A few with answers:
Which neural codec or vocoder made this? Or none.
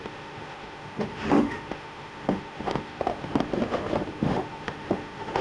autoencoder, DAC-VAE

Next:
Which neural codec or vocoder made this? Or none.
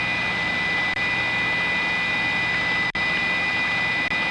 none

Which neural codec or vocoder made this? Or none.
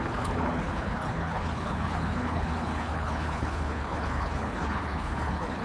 codec, HILCodec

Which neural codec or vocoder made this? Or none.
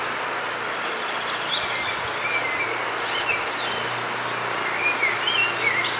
none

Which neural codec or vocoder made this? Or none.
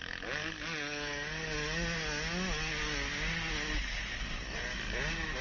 none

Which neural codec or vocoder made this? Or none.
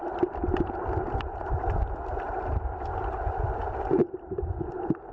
none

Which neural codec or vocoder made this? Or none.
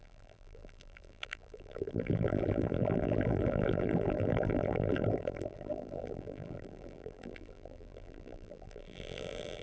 vocoder, BigVGAN v2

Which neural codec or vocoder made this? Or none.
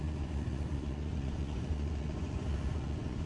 vocoder, Vocos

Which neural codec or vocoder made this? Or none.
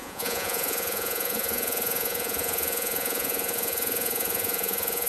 vocoder, Vocos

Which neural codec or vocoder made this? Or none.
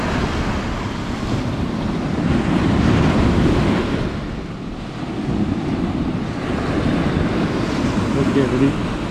none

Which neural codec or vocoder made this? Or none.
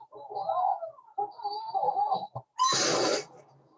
none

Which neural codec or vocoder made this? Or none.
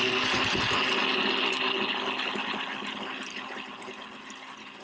none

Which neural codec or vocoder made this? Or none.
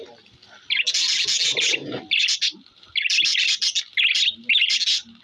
none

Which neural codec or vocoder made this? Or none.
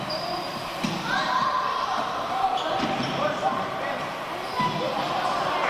vocoder, BigVGAN v2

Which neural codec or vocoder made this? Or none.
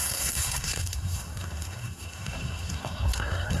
codec, SNAC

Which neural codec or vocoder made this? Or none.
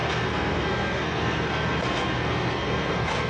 codec, SNAC